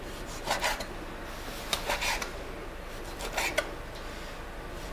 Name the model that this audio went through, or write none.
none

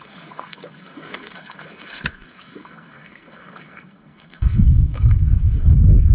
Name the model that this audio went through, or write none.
codec, SNAC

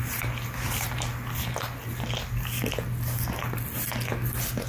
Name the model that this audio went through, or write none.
none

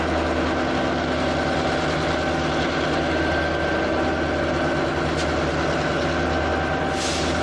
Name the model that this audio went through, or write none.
none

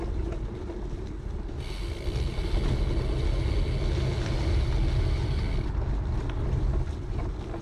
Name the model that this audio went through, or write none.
none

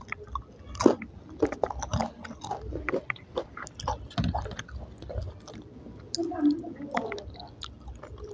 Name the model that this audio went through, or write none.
none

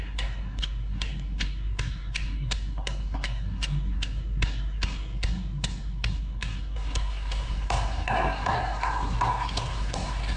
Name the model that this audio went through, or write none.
codec, SNAC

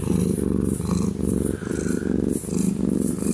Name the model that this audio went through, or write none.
none